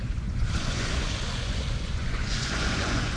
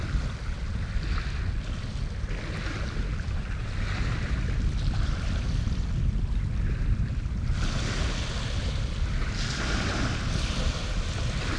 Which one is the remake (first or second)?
first